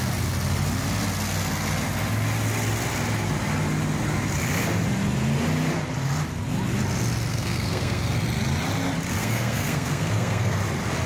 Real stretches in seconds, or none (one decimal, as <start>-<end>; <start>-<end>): 0.0-7.3; 8.0-9.2; 10.6-11.1